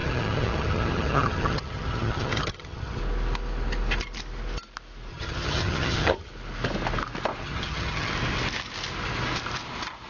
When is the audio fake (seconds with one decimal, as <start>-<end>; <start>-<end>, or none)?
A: 0.0-3.0; 5.1-6.3; 7.4-8.1